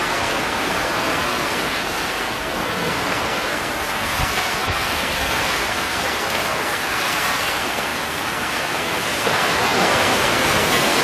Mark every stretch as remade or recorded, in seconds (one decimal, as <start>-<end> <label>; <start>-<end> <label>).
0.0-11.0 remade